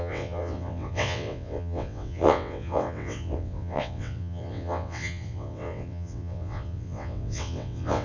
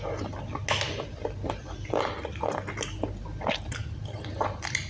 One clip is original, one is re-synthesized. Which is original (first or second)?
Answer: second